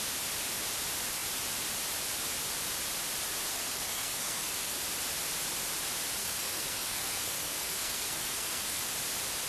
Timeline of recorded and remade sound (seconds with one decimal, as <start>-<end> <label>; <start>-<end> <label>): 0.0-3.5 recorded; 3.5-4.8 remade; 4.8-6.2 recorded; 6.2-8.8 remade; 8.8-9.5 recorded